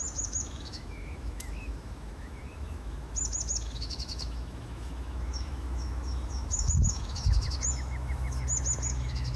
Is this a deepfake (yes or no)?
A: yes